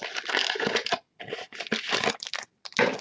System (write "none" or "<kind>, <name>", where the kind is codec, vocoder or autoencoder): none